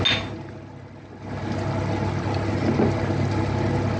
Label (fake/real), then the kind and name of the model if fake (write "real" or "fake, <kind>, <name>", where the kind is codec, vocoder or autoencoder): real